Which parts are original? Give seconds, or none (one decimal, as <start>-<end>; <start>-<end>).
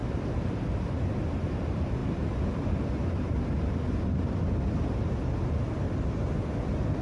0.6-2.0; 2.7-7.0